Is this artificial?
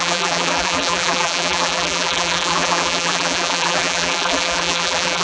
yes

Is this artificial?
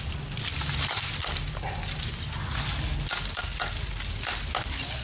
no